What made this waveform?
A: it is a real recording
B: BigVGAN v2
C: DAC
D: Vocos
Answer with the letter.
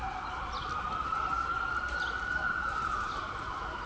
A